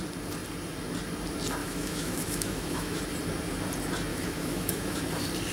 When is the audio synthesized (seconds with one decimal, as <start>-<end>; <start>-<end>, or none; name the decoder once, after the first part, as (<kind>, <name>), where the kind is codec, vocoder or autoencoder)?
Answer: 1.6-3.0 (autoencoder, DAC-VAE); 4.1-5.0